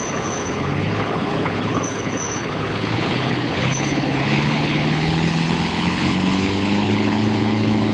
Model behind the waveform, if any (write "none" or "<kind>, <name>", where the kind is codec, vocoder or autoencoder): codec, HILCodec